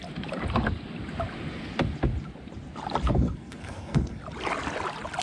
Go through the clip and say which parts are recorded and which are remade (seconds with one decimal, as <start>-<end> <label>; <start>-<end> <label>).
0.0-3.1 recorded; 3.1-4.2 remade; 4.2-5.2 recorded